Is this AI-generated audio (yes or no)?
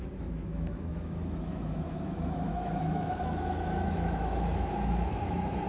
yes